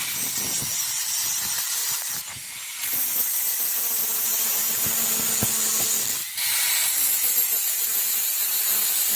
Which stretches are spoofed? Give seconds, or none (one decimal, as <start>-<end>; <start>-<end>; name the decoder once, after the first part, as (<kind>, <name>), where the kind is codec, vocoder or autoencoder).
1.8-2.8 (vocoder, BigVGAN v2); 4.0-4.6